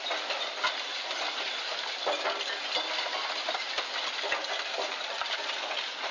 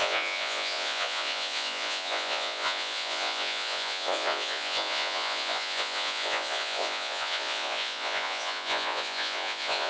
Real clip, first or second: first